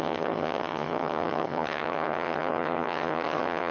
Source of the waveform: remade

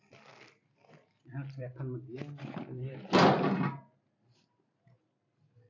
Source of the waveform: recorded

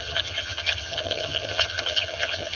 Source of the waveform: remade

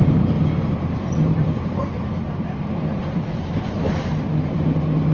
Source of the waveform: remade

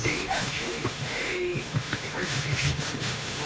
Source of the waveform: remade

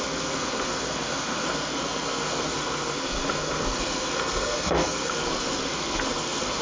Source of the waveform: remade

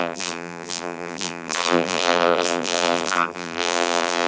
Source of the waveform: remade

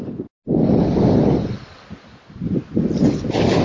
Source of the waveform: recorded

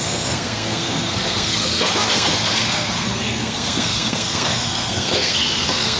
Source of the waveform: remade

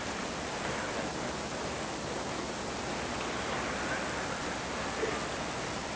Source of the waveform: recorded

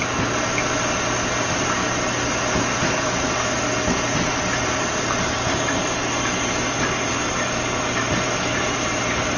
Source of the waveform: recorded